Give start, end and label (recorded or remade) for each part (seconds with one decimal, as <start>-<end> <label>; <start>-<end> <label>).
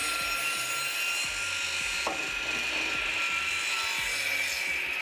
0.0-5.0 recorded